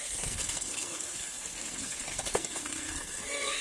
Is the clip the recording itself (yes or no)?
no